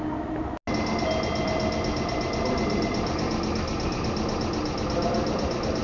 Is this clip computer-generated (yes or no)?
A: no